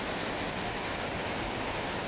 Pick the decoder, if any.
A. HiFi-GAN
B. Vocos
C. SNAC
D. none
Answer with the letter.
D